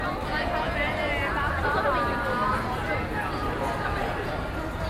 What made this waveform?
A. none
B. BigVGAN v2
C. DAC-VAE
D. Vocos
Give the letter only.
A